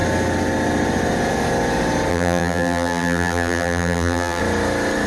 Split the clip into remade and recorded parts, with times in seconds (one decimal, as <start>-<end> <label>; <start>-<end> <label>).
0.0-2.1 recorded; 2.1-4.4 remade; 4.4-5.1 recorded